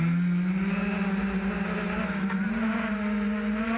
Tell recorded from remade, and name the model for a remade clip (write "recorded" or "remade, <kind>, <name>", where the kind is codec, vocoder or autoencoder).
recorded